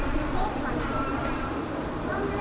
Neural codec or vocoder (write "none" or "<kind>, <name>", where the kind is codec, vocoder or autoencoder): vocoder, BigVGAN v2